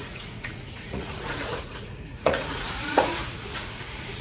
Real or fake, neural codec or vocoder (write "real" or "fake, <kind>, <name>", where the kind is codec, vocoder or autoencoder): fake, vocoder, Vocos